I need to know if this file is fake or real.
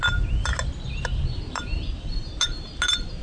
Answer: real